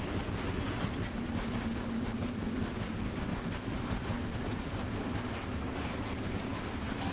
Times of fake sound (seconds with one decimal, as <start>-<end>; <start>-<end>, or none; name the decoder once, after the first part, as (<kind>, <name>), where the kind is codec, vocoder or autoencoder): none